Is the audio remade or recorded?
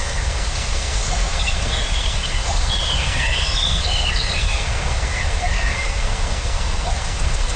remade